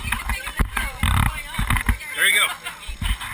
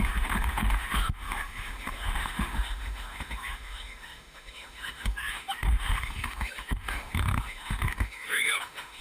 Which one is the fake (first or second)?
second